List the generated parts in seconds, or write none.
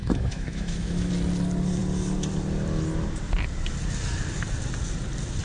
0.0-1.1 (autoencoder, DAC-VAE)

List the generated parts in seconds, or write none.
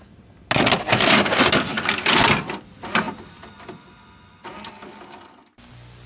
none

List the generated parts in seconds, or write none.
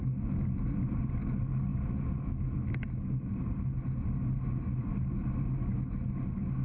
none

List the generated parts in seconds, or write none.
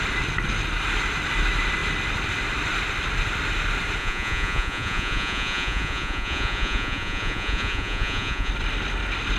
4.0-8.5 (vocoder, Vocos)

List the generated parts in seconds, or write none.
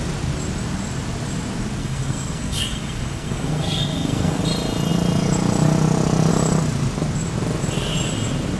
1.8-4.4 (codec, SNAC)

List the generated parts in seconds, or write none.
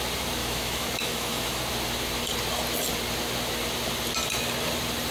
0.4-1.6 (autoencoder, DAC-VAE)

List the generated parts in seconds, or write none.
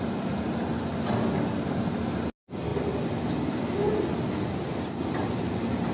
none